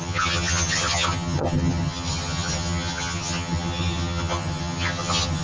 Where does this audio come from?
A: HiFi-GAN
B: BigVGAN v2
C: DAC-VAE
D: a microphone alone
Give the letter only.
A